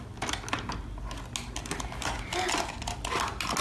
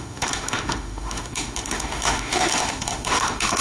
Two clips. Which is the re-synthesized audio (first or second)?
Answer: second